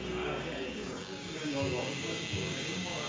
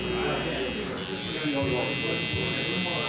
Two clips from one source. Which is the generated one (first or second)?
first